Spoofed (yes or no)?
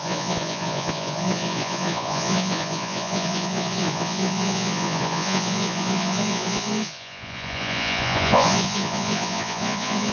yes